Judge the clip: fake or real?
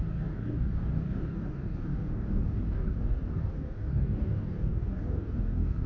fake